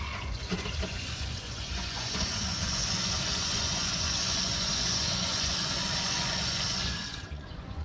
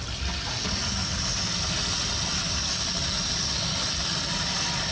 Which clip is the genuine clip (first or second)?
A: second